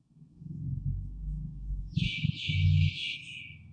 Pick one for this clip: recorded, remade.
remade